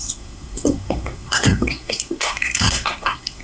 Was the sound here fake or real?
fake